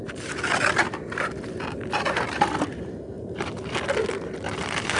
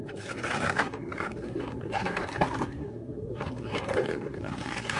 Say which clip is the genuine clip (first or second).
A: first